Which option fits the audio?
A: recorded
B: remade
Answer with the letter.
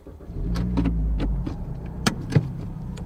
B